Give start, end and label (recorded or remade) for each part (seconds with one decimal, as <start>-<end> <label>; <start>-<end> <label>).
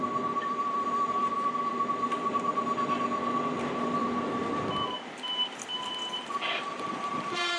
0.0-4.0 remade; 4.0-5.3 recorded; 5.3-7.6 remade